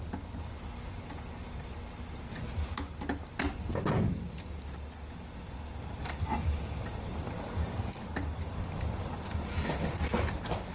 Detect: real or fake real